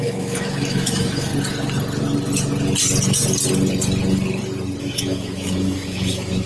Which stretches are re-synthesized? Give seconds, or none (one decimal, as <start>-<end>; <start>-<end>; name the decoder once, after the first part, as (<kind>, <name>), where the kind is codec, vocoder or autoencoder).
0.0-1.3 (autoencoder, DAC-VAE); 4.8-6.5